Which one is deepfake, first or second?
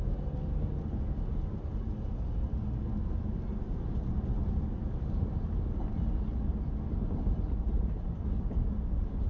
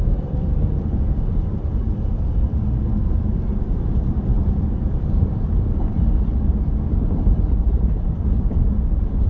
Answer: second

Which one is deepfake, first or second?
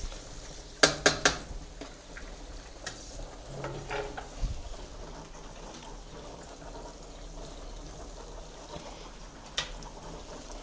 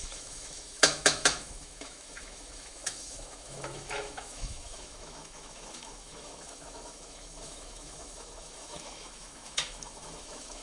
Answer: second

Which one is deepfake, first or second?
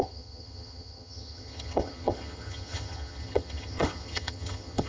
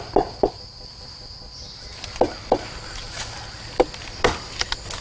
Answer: first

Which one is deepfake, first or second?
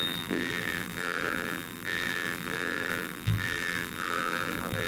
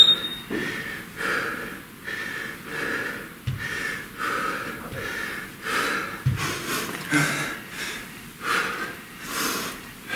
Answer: first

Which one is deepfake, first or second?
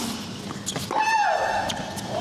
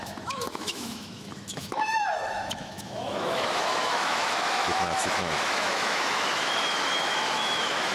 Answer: second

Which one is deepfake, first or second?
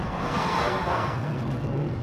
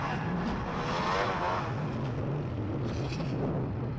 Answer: first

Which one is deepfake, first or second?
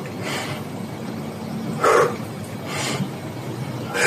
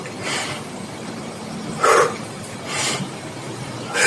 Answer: second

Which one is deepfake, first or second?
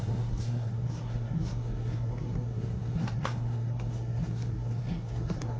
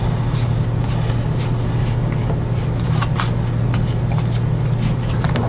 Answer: first